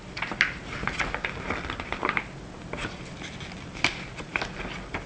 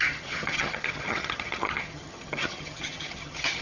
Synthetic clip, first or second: second